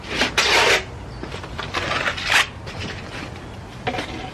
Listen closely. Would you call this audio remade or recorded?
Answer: recorded